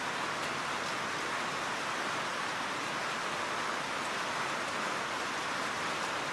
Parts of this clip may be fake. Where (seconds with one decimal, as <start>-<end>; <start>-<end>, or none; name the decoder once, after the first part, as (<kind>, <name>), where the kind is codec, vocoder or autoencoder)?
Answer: none